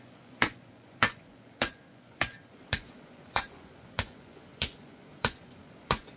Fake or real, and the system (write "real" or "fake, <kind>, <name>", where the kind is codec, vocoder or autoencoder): fake, vocoder, Vocos